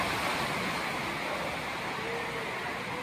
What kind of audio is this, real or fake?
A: real